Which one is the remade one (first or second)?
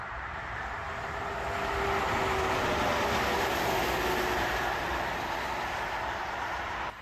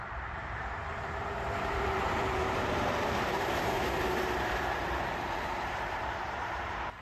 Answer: second